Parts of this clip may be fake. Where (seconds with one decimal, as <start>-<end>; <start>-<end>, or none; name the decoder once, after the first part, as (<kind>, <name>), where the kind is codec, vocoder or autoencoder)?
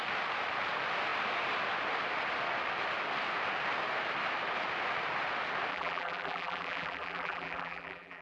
5.7-8.2 (vocoder, BigVGAN v2)